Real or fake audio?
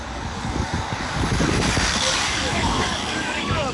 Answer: fake